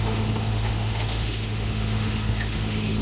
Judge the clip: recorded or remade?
remade